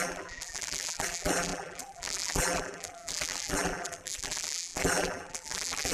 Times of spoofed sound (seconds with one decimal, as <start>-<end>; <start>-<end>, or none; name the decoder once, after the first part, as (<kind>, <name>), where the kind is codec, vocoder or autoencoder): 0.0-5.9 (vocoder, BigVGAN v2)